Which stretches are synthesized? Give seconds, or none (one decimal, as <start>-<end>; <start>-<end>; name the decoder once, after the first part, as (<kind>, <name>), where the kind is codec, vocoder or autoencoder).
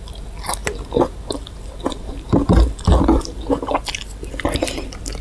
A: none